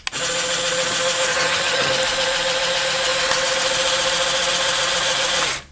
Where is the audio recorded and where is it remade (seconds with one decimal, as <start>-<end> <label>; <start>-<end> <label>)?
0.0-1.3 recorded; 1.3-1.9 remade; 1.9-5.7 recorded